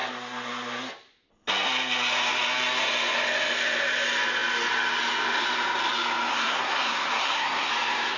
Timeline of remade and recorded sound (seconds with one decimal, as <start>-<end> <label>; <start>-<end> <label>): 0.0-6.3 recorded; 6.3-7.7 remade; 7.7-8.2 recorded